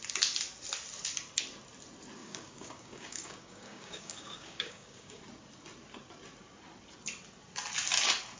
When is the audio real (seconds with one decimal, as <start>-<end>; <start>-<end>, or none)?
0.0-2.2; 5.2-8.4